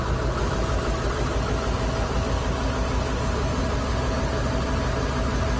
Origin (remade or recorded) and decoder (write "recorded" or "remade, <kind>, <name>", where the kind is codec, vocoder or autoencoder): recorded